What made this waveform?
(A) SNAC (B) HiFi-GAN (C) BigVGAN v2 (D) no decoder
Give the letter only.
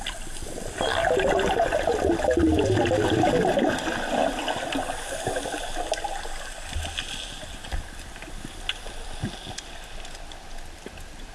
D